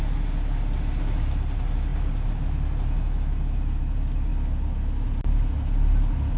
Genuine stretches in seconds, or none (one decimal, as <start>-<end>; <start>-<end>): 0.0-6.4